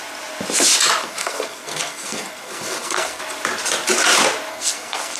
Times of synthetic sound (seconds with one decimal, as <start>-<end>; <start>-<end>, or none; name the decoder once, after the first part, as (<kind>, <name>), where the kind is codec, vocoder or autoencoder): 1.0-3.2 (codec, SNAC); 4.5-5.2